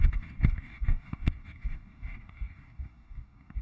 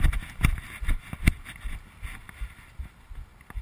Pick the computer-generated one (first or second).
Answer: first